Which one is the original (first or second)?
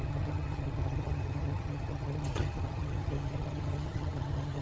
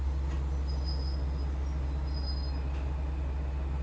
second